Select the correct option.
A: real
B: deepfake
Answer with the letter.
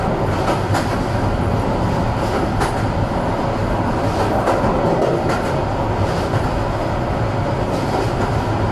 A